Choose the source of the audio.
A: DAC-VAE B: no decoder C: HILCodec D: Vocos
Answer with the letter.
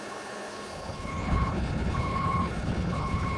C